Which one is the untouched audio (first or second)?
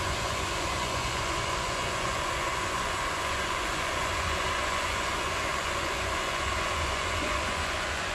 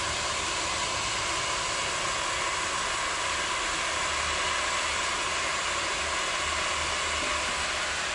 second